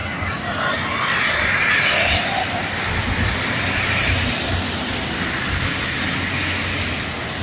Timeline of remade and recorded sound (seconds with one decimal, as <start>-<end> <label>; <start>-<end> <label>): 0.0-7.4 recorded